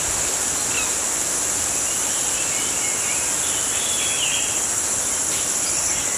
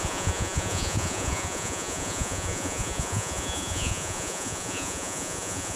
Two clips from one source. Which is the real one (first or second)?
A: first